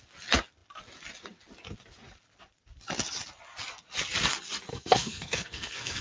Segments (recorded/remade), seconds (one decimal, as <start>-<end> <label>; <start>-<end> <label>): 0.0-4.7 recorded; 4.7-6.0 remade